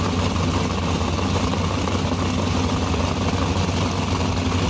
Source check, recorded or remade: recorded